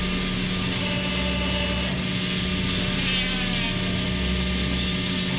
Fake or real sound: real